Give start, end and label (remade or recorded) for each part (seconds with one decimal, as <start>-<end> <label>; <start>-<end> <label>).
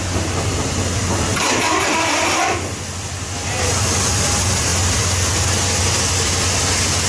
0.0-7.1 recorded